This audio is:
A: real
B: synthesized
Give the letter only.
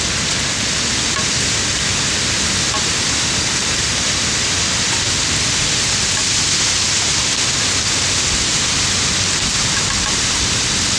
A